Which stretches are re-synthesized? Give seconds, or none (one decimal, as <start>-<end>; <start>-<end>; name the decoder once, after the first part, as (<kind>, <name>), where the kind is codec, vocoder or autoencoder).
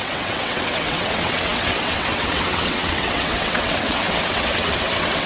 0.0-5.3 (vocoder, WaveNeXt)